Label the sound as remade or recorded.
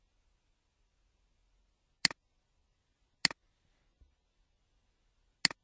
recorded